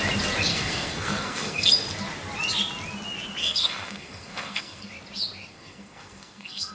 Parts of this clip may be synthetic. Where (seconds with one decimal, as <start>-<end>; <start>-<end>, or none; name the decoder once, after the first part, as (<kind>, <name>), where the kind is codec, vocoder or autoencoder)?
0.5-1.7 (codec, SNAC); 3.4-4.9; 5.5-6.7